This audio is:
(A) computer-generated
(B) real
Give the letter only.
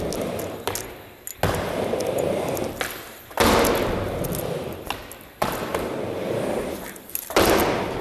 B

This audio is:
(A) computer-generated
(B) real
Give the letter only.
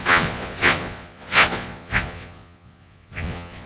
A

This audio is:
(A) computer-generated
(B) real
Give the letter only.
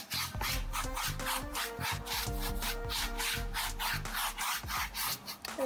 B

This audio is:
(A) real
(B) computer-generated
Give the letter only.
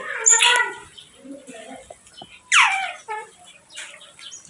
A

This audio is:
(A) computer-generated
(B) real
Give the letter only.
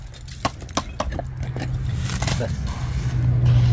B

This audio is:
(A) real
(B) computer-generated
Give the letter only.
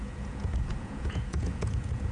B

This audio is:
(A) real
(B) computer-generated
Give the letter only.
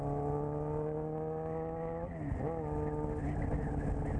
A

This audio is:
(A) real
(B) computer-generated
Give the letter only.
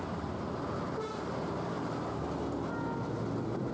A